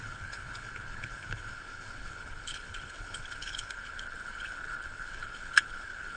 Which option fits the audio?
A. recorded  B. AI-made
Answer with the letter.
B